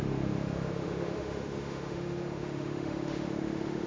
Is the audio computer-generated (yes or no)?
yes